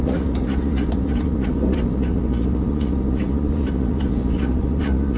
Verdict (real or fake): fake